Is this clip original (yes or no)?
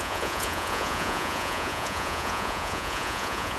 no